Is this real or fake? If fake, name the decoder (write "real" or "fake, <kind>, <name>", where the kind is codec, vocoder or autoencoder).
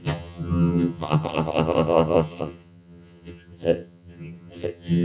fake, vocoder, HiFi-GAN